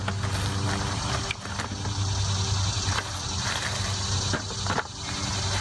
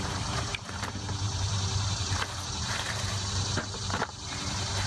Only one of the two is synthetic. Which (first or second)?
second